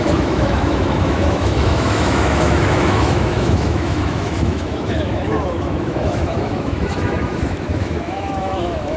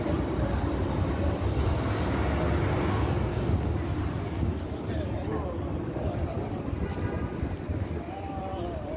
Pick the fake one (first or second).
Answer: first